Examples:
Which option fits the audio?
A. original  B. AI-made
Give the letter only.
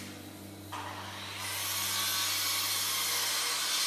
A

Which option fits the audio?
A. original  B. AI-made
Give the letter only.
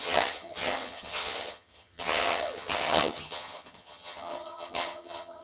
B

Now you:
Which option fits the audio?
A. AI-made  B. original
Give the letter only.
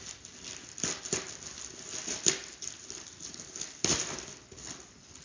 B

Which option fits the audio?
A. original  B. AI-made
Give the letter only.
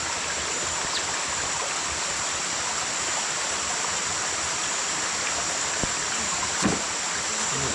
A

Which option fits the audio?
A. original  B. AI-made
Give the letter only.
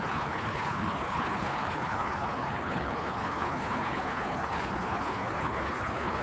B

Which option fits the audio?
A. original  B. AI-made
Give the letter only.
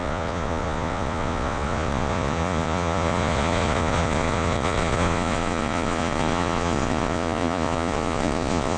B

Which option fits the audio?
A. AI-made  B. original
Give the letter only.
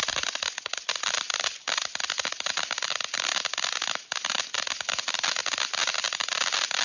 B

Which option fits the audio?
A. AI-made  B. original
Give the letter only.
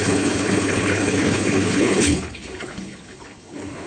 A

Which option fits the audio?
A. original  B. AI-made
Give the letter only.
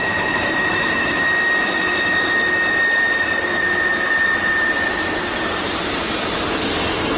A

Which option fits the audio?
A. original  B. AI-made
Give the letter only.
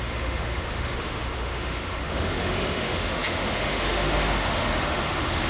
B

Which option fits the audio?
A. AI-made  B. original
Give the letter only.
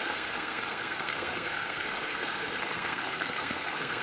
A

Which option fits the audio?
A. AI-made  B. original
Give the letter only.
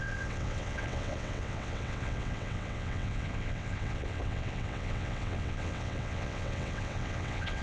A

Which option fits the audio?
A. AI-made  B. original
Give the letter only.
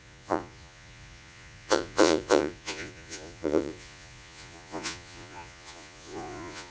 A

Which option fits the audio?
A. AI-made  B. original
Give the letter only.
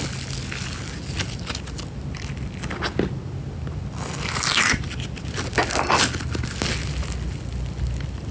B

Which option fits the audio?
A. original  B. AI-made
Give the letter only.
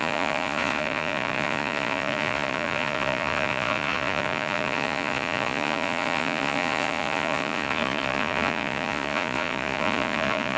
B